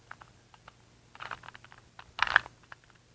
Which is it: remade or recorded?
recorded